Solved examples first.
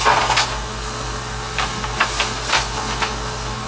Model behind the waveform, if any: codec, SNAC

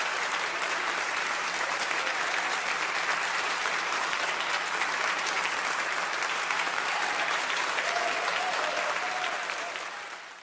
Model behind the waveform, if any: vocoder, BigVGAN v2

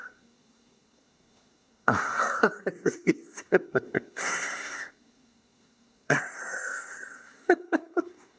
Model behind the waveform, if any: codec, SNAC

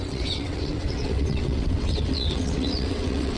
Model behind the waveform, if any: vocoder, WaveNeXt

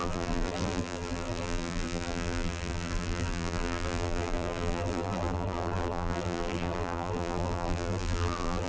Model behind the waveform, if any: vocoder, BigVGAN v2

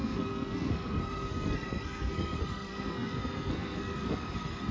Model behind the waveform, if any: codec, SNAC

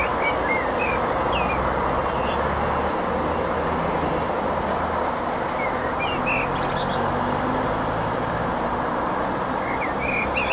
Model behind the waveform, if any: none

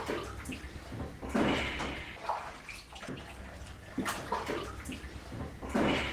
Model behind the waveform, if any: none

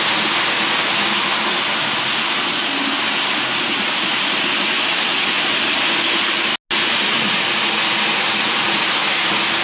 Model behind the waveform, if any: none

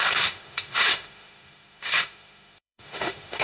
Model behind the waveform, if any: autoencoder, DAC-VAE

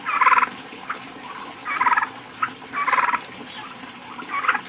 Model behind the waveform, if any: none